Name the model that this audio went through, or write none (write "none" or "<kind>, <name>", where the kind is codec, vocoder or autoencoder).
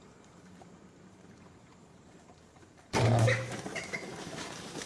vocoder, BigVGAN v2